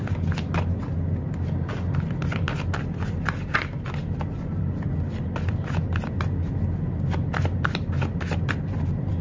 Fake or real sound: real